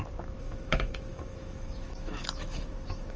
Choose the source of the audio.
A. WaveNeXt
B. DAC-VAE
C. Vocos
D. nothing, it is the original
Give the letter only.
B